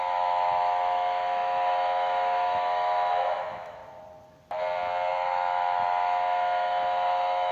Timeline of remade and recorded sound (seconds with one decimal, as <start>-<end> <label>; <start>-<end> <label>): 0.0-3.8 remade; 3.8-5.1 recorded; 5.1-7.5 remade